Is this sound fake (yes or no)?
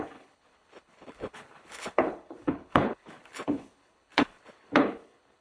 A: yes